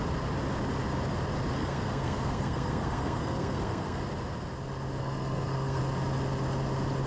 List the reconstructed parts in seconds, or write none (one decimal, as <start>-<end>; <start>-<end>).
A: 1.6-4.0; 5.0-5.8